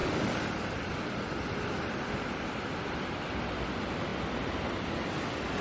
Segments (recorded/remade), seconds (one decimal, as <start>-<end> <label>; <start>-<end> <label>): 0.0-3.4 remade; 3.4-5.6 recorded